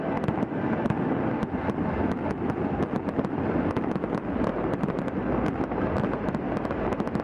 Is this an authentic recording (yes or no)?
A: yes